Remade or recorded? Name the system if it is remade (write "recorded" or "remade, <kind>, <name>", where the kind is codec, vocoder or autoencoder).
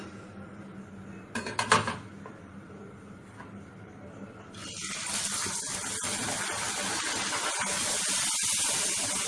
recorded